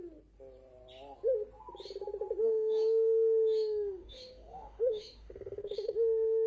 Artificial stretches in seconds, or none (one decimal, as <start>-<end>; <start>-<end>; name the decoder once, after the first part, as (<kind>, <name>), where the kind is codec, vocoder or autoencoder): 2.4-6.5 (autoencoder, DAC-VAE)